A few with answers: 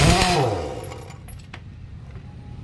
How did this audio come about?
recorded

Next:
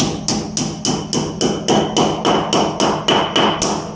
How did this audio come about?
recorded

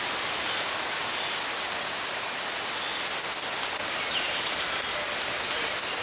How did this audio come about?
recorded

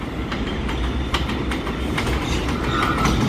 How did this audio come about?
recorded